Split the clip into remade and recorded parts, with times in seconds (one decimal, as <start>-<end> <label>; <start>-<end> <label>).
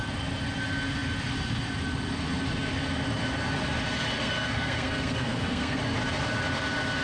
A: 0.0-4.2 recorded; 4.2-5.8 remade; 5.8-7.0 recorded